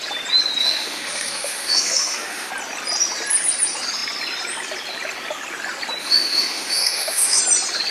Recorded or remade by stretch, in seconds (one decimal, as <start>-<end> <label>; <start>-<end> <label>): 0.0-0.6 recorded; 0.6-2.5 remade; 2.5-6.0 recorded; 6.0-7.4 remade; 7.4-7.9 recorded